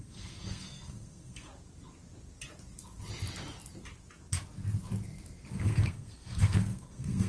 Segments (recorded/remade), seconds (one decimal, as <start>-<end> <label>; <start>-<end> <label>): 0.0-1.5 remade; 1.5-5.5 recorded; 5.5-7.3 remade